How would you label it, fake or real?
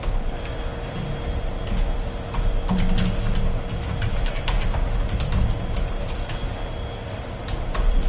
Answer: real